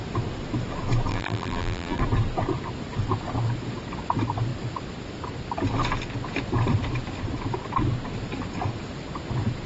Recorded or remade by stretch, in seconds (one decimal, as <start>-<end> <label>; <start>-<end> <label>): 0.0-1.1 recorded; 1.1-2.0 remade; 2.0-9.7 recorded